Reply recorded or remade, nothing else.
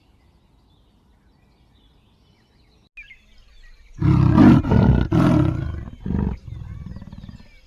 recorded